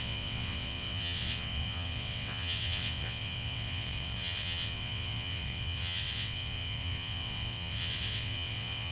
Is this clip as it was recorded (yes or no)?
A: no